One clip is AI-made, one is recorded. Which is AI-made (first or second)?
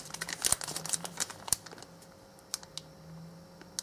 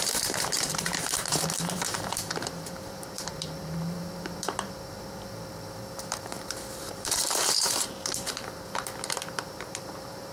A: second